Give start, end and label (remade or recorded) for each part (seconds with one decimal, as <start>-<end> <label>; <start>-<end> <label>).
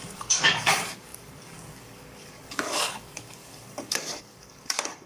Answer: 0.0-5.1 remade